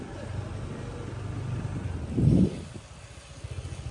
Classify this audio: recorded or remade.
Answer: recorded